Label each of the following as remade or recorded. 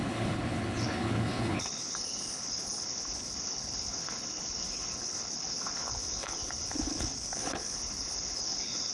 remade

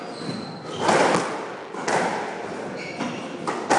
recorded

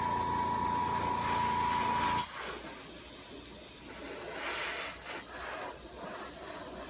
recorded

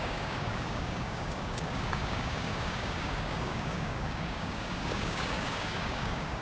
remade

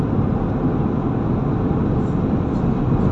recorded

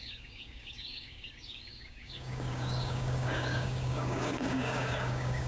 remade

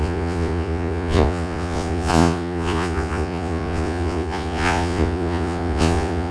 remade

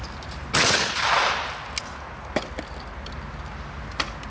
recorded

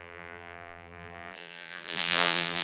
remade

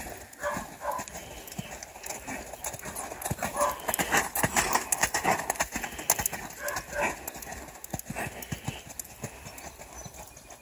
recorded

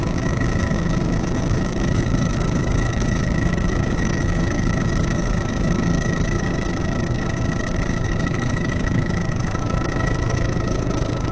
remade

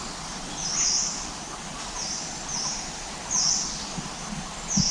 recorded